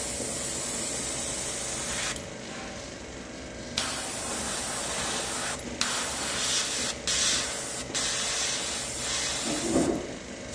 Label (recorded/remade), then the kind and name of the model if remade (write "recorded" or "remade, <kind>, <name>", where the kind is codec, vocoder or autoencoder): recorded